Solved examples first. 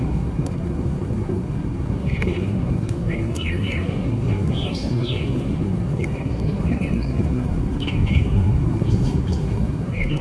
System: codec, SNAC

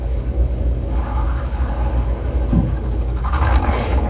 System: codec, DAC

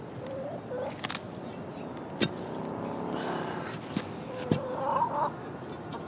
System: none